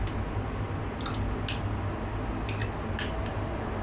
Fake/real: real